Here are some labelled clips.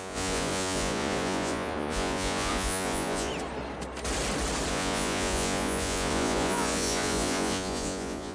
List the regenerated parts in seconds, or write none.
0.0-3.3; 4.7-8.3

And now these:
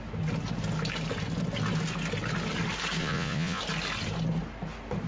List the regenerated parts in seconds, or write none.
3.0-3.6

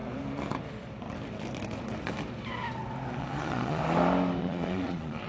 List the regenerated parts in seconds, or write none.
3.2-3.8; 4.4-5.3

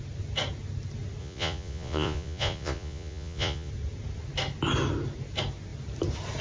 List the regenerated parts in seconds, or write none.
1.2-3.7

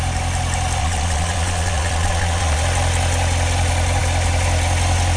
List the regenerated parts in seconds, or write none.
0.8-2.6